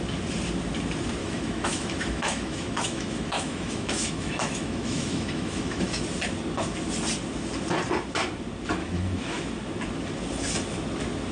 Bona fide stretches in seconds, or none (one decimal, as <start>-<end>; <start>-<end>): 0.0-1.2; 6.0-8.8; 9.4-11.3